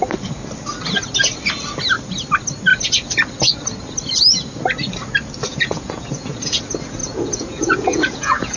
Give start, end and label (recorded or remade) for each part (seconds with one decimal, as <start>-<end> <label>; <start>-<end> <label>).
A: 0.0-5.5 recorded; 5.5-6.6 remade; 6.6-7.0 recorded; 7.0-8.6 remade